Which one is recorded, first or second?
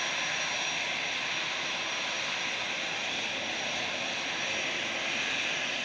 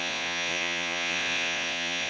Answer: first